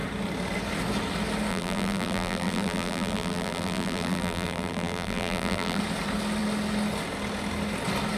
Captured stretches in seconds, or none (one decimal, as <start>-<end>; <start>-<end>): 0.0-1.5; 5.8-8.2